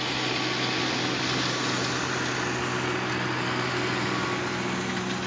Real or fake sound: real